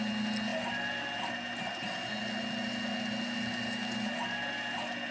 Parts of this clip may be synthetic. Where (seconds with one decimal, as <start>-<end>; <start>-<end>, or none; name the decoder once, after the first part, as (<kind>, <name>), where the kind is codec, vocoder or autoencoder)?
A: none